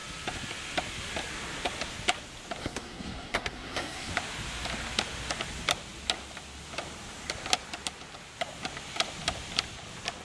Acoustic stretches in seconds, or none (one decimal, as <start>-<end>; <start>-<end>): 0.0-2.6; 4.1-10.2